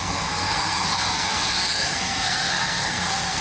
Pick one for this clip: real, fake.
fake